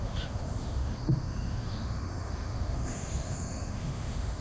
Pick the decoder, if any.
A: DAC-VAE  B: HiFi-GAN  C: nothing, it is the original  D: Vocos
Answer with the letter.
A